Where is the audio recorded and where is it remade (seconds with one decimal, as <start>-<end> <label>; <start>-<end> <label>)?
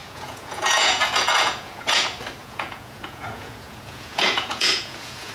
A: 0.0-2.0 remade; 2.0-2.4 recorded; 2.4-5.3 remade